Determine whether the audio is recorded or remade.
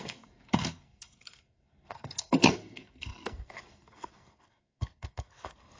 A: remade